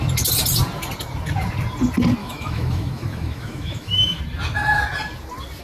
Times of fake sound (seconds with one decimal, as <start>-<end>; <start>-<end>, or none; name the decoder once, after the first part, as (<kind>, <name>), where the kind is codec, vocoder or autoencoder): 2.2-4.2 (autoencoder, DAC-VAE)